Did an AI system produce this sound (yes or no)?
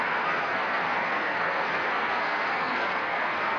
yes